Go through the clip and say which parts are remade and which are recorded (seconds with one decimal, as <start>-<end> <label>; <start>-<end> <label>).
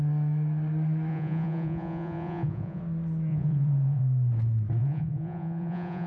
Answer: 0.0-1.1 recorded; 1.1-2.8 remade; 2.8-3.3 recorded; 3.3-4.0 remade; 4.0-4.8 recorded; 4.8-6.1 remade